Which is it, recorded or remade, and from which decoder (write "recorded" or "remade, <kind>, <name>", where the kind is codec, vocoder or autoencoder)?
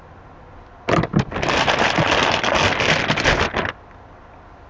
recorded